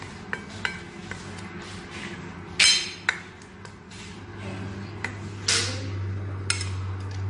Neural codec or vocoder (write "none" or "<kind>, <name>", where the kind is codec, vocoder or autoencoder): none